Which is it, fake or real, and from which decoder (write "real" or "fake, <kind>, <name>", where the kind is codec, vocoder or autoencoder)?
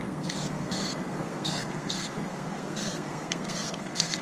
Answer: fake, codec, SNAC